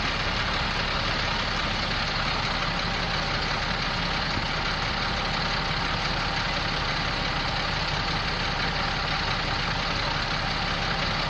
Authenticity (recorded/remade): recorded